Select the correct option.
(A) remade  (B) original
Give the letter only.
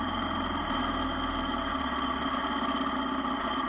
B